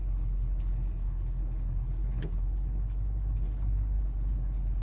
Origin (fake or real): fake